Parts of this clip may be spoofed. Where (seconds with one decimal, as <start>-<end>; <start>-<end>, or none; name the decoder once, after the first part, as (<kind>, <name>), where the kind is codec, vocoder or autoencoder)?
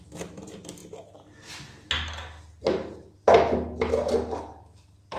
none